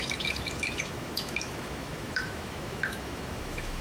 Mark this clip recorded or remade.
remade